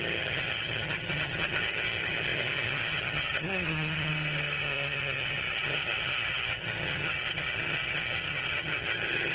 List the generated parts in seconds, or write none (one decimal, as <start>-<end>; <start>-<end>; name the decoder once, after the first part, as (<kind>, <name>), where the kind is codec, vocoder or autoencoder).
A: 0.0-4.1 (vocoder, HiFi-GAN); 4.6-9.3